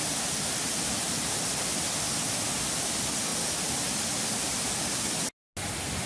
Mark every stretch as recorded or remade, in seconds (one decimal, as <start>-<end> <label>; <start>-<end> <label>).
0.0-6.1 recorded

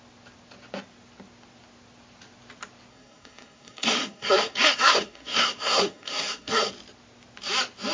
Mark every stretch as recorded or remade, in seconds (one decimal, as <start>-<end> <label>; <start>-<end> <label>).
0.0-2.9 recorded; 2.9-6.7 remade; 6.7-7.9 recorded

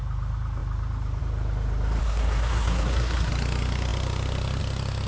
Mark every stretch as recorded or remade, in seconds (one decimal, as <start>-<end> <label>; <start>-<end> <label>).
0.0-2.0 recorded; 2.0-3.3 remade; 3.3-5.1 recorded

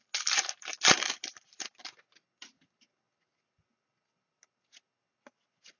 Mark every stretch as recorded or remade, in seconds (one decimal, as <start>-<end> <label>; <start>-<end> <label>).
0.0-5.8 recorded

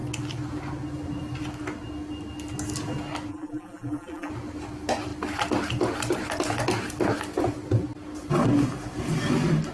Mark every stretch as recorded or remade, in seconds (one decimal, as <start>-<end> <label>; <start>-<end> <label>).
0.0-3.3 recorded; 3.3-4.3 remade; 4.3-9.7 recorded

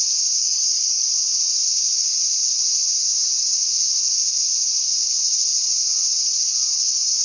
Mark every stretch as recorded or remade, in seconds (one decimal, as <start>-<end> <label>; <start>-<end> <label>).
0.0-0.4 recorded; 0.4-1.1 remade; 1.1-7.2 recorded

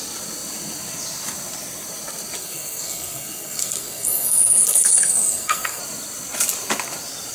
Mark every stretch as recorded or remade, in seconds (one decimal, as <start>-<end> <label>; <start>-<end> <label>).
0.0-2.4 recorded; 2.4-5.8 remade; 5.8-7.3 recorded